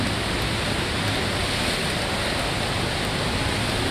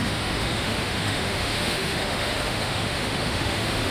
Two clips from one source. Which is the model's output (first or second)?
second